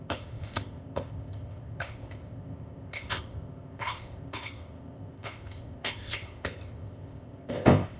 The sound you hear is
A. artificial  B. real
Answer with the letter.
A